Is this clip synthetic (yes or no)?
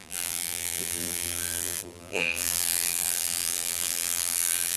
yes